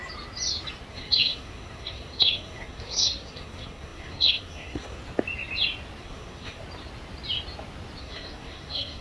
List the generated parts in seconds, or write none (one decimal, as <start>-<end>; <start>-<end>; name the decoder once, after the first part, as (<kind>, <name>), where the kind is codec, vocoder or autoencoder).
0.9-5.0 (codec, SNAC); 6.0-6.6; 8.0-9.0